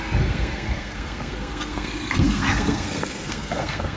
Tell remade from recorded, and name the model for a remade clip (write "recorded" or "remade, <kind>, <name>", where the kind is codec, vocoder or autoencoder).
remade, codec, SNAC